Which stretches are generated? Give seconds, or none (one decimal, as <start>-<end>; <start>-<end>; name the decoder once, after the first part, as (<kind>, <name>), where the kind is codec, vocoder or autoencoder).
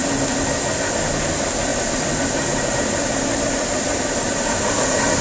1.7-4.8 (vocoder, BigVGAN v2)